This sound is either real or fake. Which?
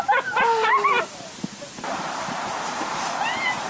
fake